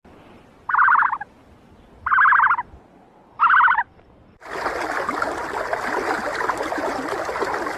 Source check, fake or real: real